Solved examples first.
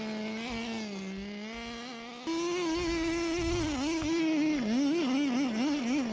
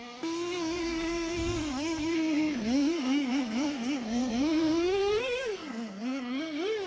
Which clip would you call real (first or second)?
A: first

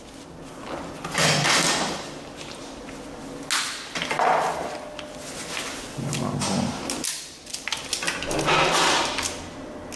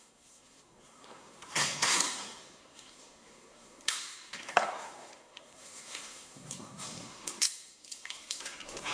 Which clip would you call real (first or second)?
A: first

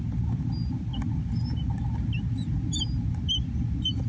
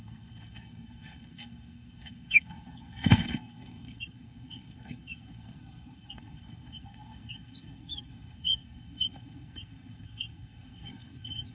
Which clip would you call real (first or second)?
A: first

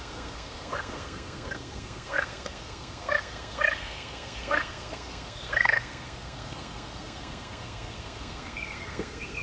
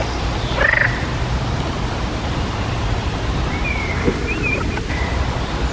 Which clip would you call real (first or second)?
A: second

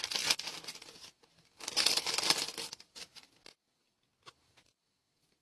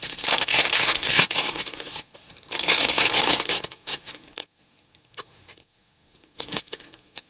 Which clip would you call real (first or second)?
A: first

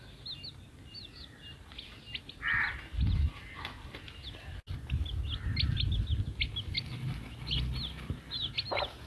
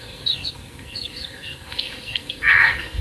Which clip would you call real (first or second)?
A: first